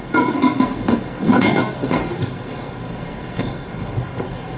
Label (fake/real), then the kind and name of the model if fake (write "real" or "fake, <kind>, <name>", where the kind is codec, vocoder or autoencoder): fake, codec, SNAC